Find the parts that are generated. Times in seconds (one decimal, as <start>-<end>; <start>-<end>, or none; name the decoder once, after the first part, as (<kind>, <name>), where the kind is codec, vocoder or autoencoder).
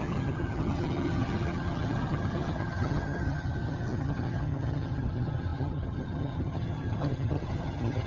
0.0-8.1 (vocoder, HiFi-GAN)